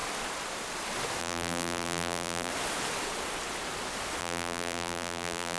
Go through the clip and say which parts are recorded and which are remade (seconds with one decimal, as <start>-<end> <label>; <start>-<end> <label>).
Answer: 0.0-1.2 recorded; 1.2-2.5 remade; 2.5-4.2 recorded; 4.2-5.6 remade